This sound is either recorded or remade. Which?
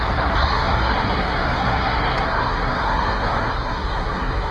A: remade